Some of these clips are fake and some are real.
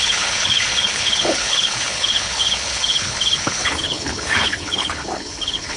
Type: fake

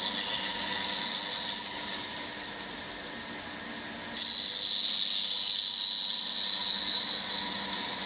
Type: real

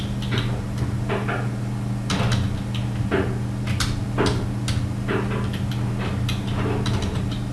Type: real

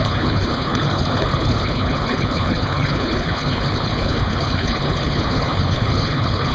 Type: fake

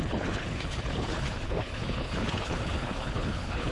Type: fake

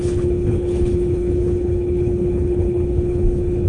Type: fake